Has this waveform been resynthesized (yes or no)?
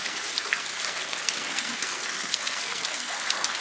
yes